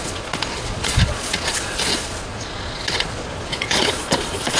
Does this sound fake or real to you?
fake